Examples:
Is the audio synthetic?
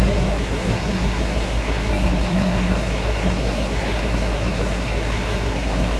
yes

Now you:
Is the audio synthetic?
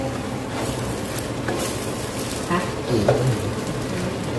no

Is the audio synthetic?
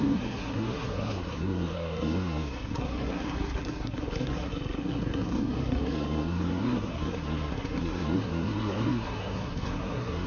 yes